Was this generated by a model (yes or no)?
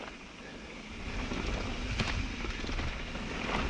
no